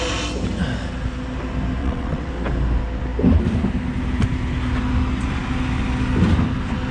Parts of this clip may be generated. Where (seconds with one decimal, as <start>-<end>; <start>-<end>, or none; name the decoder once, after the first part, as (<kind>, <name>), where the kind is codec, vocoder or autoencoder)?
1.8-2.3 (vocoder, WaveNeXt)